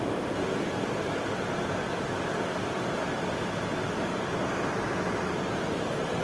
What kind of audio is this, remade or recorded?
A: recorded